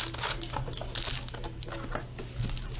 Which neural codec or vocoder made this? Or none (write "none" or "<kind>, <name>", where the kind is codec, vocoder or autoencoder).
none